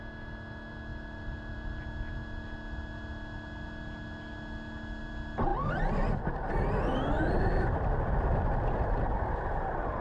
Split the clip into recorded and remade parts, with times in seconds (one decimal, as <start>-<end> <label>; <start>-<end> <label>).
0.0-0.9 recorded; 0.9-1.8 remade; 1.8-5.5 recorded; 5.5-6.1 remade; 6.1-10.0 recorded